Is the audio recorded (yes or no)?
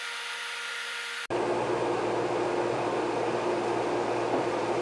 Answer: yes